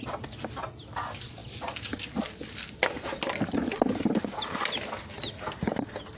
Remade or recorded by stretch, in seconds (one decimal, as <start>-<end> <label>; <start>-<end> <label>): 0.0-6.2 recorded